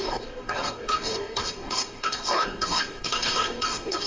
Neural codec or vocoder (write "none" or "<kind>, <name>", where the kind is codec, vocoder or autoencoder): codec, DAC